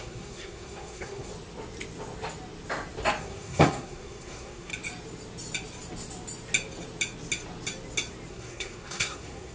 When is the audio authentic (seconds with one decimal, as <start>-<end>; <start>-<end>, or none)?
1.3-3.2; 4.7-8.3